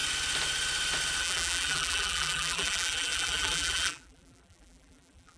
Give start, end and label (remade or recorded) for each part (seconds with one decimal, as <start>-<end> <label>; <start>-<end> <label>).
0.0-1.2 recorded; 1.2-5.4 remade